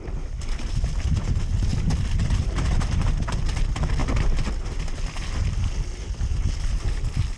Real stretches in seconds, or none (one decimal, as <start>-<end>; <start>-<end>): 0.0-7.4